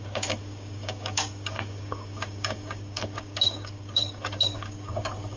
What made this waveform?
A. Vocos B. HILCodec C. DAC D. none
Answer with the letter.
C